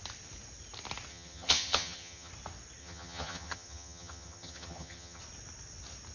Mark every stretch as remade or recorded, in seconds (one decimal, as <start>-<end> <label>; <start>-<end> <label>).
0.0-1.1 recorded; 1.1-2.3 remade; 2.3-2.8 recorded; 2.8-5.2 remade; 5.2-6.1 recorded